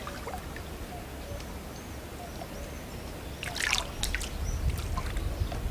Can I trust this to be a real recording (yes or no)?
yes